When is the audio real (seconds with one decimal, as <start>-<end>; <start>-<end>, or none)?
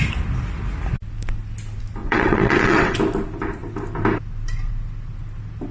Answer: 0.0-2.0; 3.0-5.7